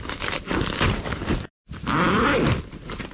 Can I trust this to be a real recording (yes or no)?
yes